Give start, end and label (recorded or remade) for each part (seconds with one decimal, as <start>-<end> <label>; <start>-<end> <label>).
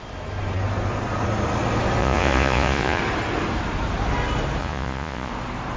0.0-2.0 recorded; 2.0-3.0 remade; 3.0-4.6 recorded; 4.6-5.3 remade; 5.3-5.8 recorded